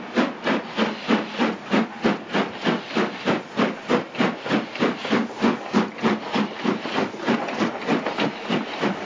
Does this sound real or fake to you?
real